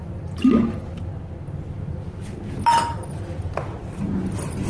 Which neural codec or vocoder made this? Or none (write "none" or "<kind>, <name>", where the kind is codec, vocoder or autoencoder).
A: none